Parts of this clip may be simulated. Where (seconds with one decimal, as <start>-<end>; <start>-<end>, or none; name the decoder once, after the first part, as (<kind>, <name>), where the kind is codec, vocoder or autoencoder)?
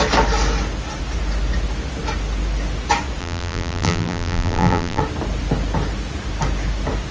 3.2-5.0 (vocoder, BigVGAN v2)